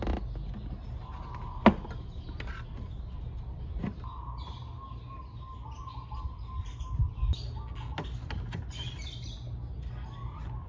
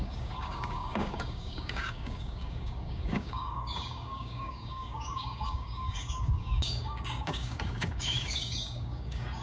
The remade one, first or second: second